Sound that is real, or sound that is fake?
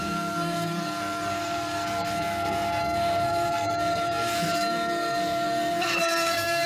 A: fake